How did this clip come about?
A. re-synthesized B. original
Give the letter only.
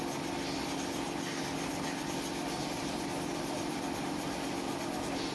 B